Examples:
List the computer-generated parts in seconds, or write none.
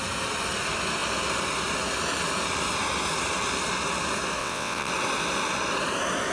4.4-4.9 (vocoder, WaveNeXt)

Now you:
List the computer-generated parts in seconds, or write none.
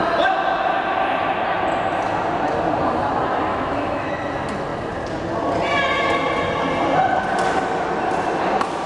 3.5-4.1 (autoencoder, DAC-VAE)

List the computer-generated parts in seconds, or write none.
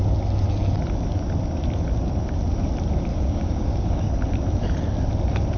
3.1-4.1 (codec, DAC)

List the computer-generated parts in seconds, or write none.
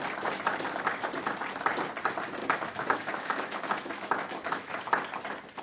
2.4-5.0 (autoencoder, DAC-VAE)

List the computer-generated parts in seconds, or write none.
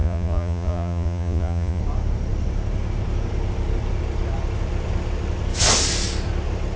0.0-1.8 (vocoder, Vocos)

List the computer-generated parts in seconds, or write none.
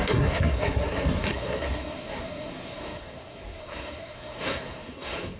0.0-5.4 (codec, SNAC)